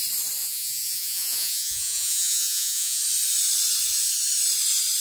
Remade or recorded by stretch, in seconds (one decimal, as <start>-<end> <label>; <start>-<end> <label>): 0.0-0.4 recorded; 0.4-3.0 remade; 3.0-5.0 recorded